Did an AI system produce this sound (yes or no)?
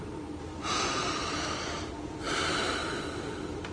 no